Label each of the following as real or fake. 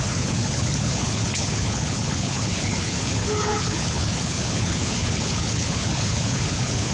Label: fake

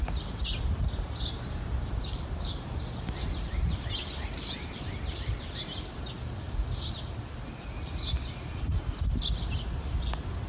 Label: real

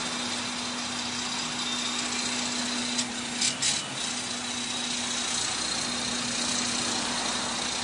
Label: real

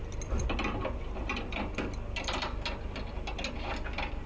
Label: real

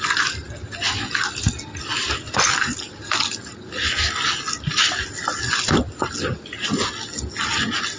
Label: real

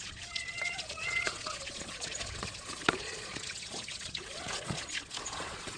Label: fake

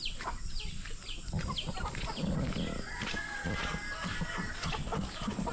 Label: real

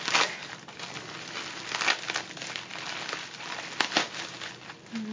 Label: real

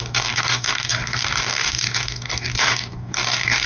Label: fake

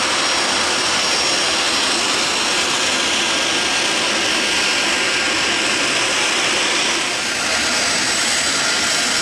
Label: real